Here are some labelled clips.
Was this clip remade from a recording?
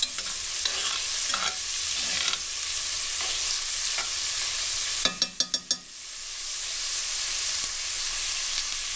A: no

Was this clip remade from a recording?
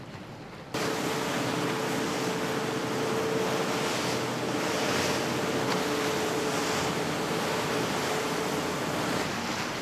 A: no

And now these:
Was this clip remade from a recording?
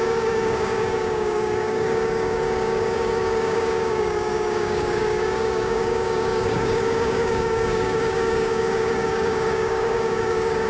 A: yes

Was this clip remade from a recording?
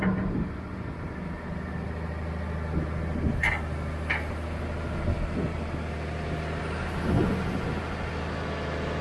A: no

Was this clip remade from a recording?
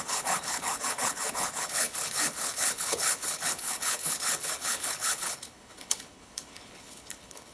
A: yes